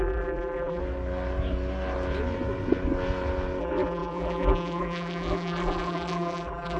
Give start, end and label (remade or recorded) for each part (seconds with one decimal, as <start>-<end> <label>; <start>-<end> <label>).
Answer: 0.0-0.8 remade; 0.8-3.6 recorded; 3.6-6.8 remade